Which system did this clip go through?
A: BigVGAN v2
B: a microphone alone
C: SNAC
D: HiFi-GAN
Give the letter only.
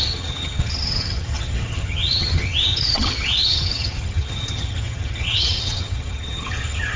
D